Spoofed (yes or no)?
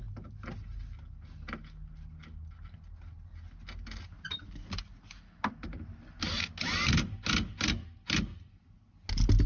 no